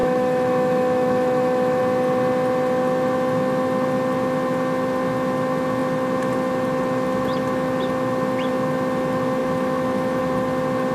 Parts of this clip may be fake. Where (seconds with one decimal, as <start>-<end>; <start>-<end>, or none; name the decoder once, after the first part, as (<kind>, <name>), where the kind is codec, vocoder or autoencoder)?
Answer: 0.0-1.8 (autoencoder, DAC-VAE); 9.4-10.2